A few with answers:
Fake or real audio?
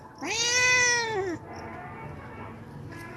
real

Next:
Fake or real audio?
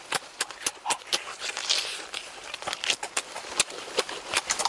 real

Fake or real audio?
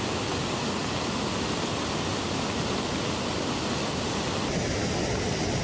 real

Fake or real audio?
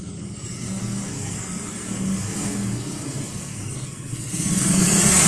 fake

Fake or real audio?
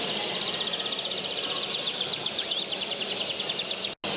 real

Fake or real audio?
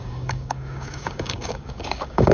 fake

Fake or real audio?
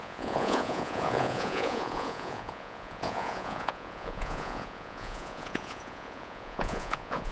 fake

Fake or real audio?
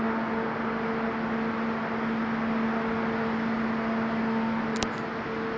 real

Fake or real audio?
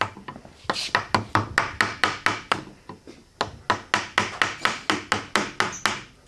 real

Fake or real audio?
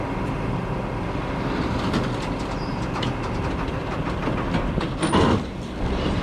real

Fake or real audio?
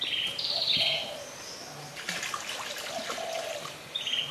real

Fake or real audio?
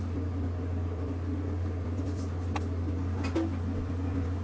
real